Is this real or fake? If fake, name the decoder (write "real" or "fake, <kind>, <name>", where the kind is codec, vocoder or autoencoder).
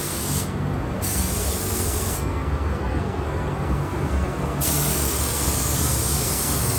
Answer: fake, codec, SNAC